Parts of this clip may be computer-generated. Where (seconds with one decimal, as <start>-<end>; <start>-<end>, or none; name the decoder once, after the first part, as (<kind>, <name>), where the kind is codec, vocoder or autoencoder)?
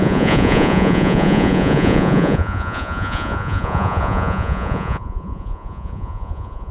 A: 0.0-6.7 (vocoder, Vocos)